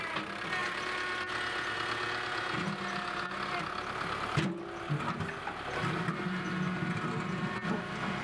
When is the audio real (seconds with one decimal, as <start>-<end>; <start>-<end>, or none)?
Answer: 0.0-8.2